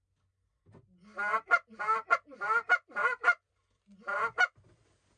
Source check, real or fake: real